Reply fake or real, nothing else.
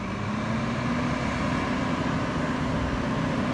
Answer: real